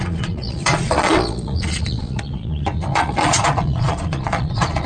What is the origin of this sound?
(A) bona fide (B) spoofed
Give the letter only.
B